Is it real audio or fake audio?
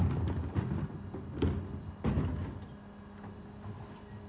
real